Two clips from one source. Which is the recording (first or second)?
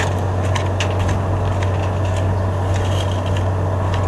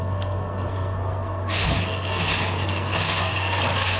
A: first